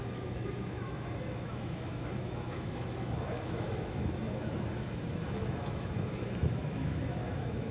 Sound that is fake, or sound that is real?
fake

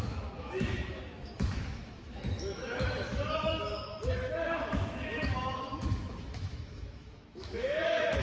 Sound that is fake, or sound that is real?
fake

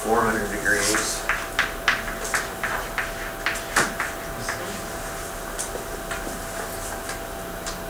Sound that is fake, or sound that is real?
real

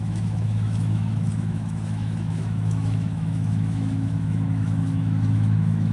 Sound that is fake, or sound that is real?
fake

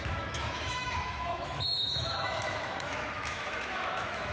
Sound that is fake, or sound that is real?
fake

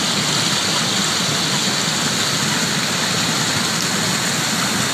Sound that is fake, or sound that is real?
real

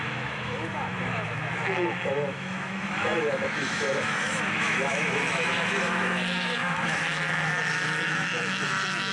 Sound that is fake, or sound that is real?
fake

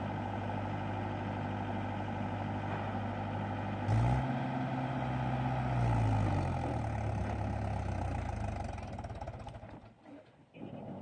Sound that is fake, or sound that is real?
real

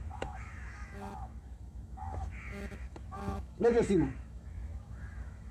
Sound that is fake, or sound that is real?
fake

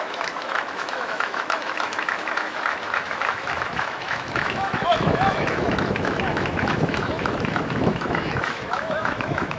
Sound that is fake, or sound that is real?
fake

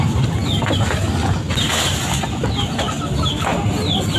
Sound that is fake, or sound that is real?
real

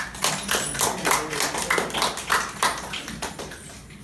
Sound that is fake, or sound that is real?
real